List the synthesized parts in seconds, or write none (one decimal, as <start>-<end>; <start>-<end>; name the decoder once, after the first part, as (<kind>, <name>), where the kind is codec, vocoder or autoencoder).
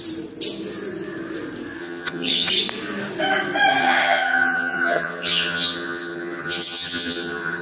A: 1.8-2.5 (vocoder, HiFi-GAN); 3.8-7.6